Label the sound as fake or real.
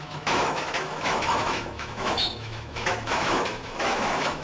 fake